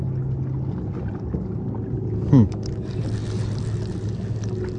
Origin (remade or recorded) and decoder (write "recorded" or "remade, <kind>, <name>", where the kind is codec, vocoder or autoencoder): recorded